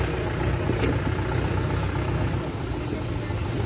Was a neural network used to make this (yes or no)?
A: no